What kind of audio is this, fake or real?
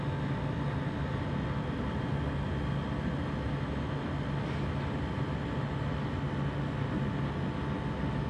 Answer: real